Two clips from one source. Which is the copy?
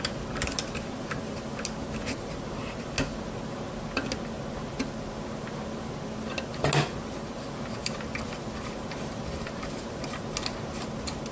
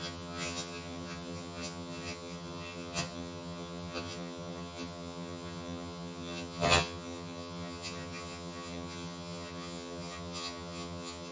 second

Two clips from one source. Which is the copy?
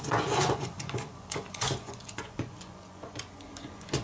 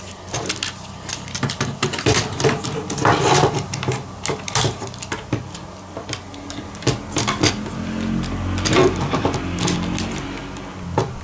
first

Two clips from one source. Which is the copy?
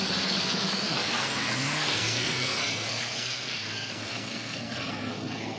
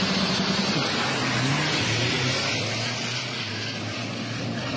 first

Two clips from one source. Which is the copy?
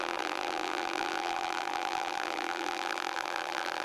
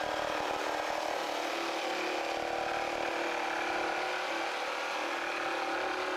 first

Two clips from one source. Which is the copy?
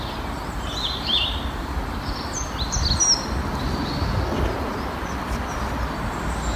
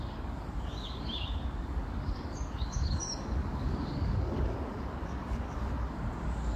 second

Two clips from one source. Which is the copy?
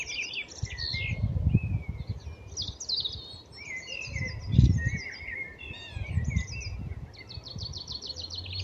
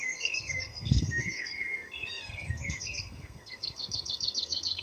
second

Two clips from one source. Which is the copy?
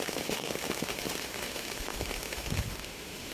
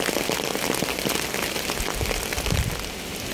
first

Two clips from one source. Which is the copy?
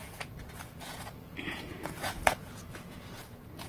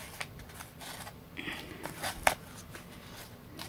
first